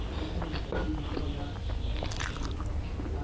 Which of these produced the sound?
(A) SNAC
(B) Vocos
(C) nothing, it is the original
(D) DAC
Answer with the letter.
C